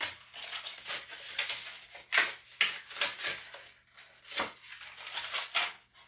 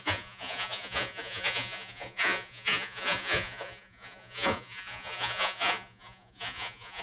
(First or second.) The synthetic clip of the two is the second